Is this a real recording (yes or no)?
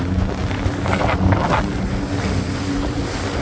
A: yes